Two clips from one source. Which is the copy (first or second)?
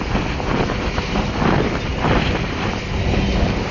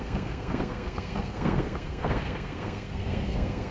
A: second